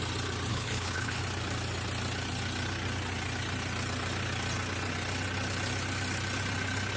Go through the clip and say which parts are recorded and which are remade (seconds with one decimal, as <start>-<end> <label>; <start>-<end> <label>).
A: 0.0-0.5 recorded; 0.5-1.2 remade; 1.2-7.0 recorded